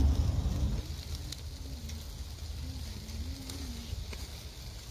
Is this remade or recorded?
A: recorded